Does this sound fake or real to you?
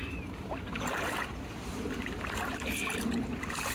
real